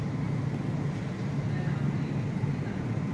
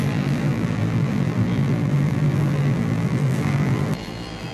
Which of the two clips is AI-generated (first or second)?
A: second